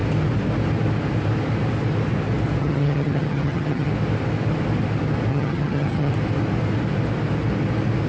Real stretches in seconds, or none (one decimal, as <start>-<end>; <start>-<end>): 0.0-2.6; 3.9-5.3; 6.1-8.1